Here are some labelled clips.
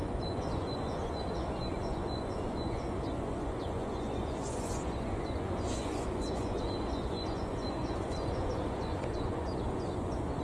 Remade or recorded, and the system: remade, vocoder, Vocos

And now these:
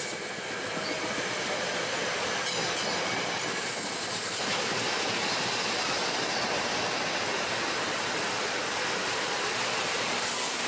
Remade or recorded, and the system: recorded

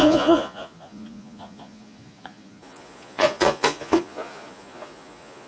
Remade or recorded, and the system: remade, vocoder, Vocos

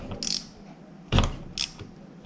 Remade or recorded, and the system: recorded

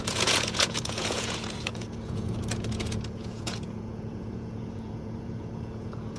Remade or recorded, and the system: remade, vocoder, Vocos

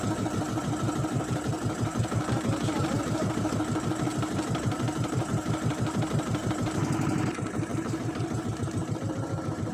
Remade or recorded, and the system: remade, vocoder, BigVGAN v2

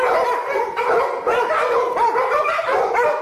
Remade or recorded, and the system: recorded